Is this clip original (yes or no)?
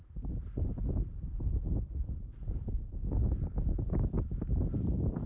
yes